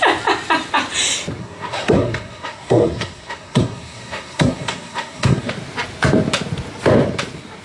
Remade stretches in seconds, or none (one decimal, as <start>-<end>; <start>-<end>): 1.4-5.5